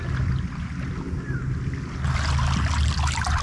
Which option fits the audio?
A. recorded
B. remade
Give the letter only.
A